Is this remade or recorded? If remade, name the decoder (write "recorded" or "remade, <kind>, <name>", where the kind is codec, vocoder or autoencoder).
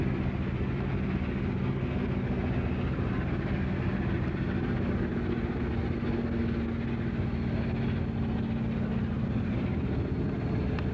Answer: recorded